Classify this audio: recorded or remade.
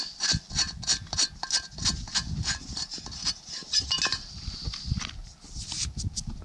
recorded